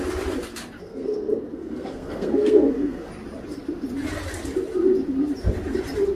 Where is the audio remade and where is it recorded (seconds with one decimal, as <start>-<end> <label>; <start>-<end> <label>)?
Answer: 0.0-0.8 recorded; 0.8-3.1 remade; 3.1-6.2 recorded